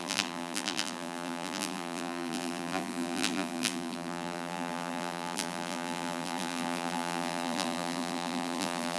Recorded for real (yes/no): no